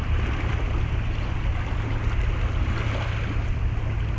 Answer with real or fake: real